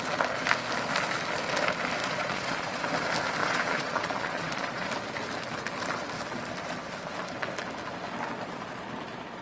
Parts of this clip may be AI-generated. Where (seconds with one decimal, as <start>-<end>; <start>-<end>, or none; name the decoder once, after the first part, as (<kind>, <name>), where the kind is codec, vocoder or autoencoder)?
2.0-2.9 (vocoder, Vocos); 3.4-4.8